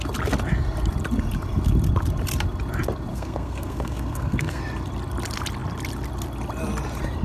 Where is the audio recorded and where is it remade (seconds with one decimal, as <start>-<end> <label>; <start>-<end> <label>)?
0.0-3.1 recorded; 3.1-4.6 remade; 4.6-7.2 recorded